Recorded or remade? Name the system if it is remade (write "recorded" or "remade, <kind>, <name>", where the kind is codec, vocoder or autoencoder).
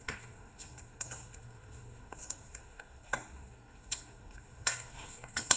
remade, codec, SNAC